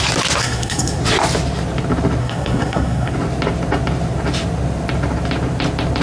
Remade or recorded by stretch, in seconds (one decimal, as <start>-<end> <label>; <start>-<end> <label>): 0.0-0.4 recorded; 0.4-1.0 remade; 1.0-2.2 recorded; 2.2-3.1 remade; 3.1-6.0 recorded